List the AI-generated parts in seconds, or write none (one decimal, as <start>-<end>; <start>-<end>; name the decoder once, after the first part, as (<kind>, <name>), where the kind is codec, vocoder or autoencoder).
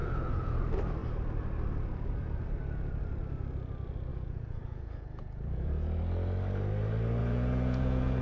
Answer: 0.0-0.6 (vocoder, Vocos); 4.1-6.0; 7.2-8.2